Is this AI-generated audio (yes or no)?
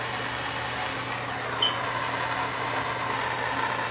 no